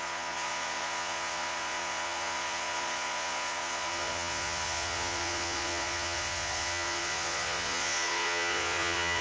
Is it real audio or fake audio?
fake